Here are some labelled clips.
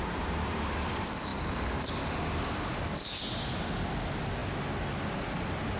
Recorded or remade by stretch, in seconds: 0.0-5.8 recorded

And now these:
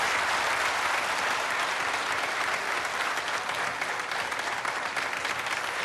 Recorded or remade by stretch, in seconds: 0.0-5.8 recorded

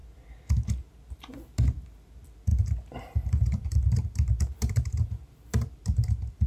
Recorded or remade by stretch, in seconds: 0.0-2.5 recorded; 2.5-6.5 remade